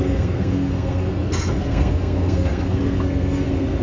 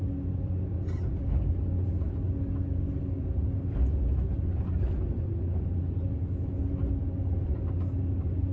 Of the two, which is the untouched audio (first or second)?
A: second